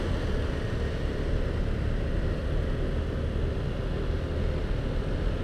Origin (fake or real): real